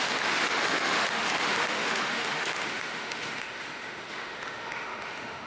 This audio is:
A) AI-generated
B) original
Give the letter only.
A